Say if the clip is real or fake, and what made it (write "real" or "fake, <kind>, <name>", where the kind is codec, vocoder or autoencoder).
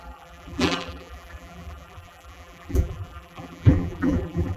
fake, vocoder, BigVGAN v2